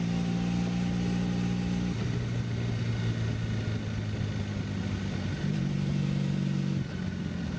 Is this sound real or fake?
real